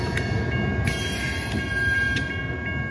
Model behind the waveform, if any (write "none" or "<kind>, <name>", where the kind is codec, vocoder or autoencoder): none